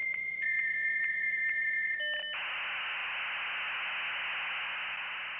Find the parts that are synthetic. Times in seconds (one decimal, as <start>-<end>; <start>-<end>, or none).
0.0-2.0